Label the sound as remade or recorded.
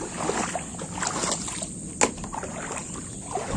recorded